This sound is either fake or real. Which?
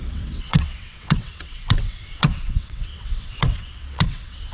fake